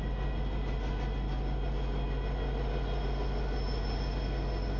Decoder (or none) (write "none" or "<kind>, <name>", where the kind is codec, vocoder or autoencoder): none